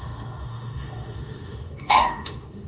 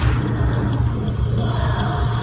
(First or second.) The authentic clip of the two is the second